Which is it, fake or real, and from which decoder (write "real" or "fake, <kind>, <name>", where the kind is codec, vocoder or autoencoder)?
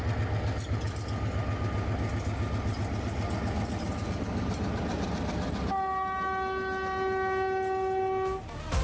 real